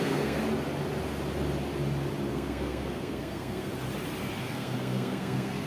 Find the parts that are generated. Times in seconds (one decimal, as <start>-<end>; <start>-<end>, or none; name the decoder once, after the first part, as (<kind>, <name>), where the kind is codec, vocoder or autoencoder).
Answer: 0.0-0.4 (codec, SNAC); 2.3-3.7; 4.4-5.7